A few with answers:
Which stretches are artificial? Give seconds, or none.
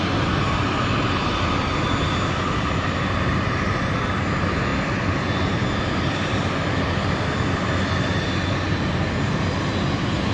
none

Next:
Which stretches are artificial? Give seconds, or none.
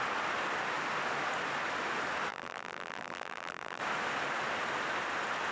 2.3-3.8 (vocoder, BigVGAN v2)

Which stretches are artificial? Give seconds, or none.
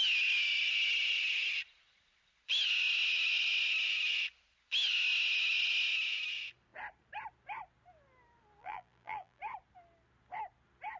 8.6-9.4 (vocoder, BigVGAN v2)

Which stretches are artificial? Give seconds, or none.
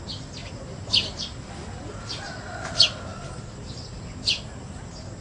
0.4-1.5 (vocoder, BigVGAN v2)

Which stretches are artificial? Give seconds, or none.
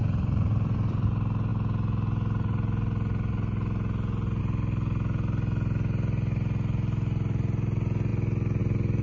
0.0-1.1 (vocoder, BigVGAN v2)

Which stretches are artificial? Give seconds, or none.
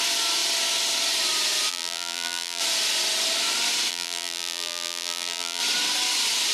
1.7-2.6 (vocoder, BigVGAN v2); 3.9-5.6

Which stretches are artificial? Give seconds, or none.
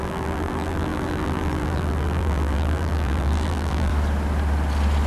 0.0-3.9 (vocoder, BigVGAN v2)